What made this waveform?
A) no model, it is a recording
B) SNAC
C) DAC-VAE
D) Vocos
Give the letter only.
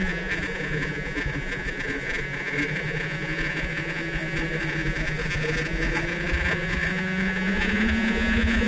D